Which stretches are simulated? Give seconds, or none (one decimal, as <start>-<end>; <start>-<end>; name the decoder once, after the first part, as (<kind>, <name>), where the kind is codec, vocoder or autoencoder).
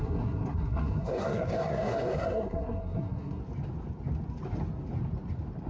0.0-3.4 (codec, SNAC)